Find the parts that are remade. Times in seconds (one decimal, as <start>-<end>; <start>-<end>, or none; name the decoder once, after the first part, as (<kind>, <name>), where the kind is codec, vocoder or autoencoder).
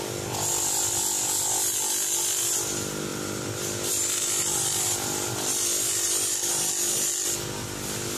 3.1-6.5 (vocoder, BigVGAN v2)